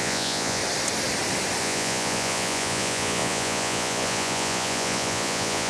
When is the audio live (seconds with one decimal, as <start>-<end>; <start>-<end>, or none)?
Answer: 0.6-1.6